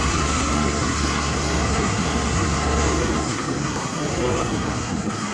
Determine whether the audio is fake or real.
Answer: fake